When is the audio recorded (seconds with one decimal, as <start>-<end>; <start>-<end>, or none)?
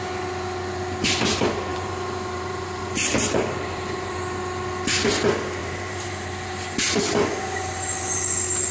0.0-1.7; 4.2-5.6; 6.1-8.7